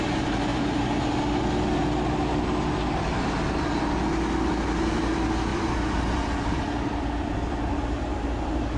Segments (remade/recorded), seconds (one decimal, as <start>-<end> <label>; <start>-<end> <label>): 0.0-5.5 recorded; 5.5-7.7 remade; 7.7-8.8 recorded